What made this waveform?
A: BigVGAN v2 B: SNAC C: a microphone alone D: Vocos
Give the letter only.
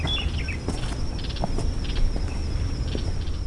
C